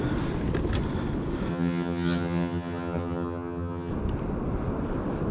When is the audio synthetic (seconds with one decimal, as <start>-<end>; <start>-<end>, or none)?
1.5-3.9